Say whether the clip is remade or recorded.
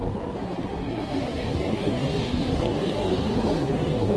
remade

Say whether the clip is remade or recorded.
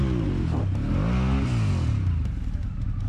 recorded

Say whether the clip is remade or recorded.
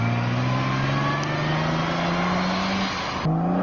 recorded